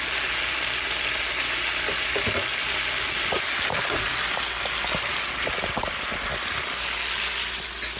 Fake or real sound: real